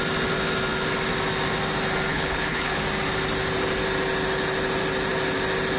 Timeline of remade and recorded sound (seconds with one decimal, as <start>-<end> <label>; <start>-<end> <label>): 0.0-2.1 recorded; 2.1-2.8 remade; 2.8-5.8 recorded